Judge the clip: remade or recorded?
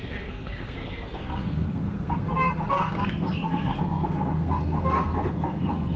remade